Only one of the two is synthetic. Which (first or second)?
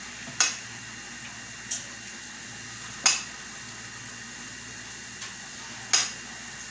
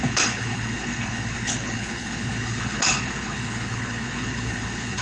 second